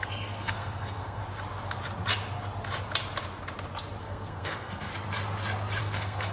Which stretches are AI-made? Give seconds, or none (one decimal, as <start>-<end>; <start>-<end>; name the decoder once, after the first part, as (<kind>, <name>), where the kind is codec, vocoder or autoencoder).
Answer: 0.0-1.2 (codec, SNAC); 4.0-4.9; 5.8-6.3